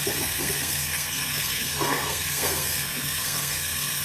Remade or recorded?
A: remade